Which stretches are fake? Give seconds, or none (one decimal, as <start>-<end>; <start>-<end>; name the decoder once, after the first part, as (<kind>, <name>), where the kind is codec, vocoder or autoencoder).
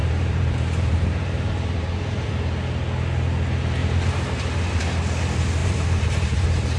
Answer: 0.0-2.3 (vocoder, BigVGAN v2); 3.8-4.8; 5.6-6.8